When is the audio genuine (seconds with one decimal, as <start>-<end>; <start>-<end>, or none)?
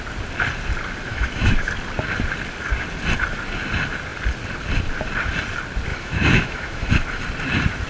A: 0.0-1.1; 1.7-5.9; 6.9-7.9